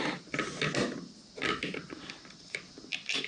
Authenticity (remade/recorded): recorded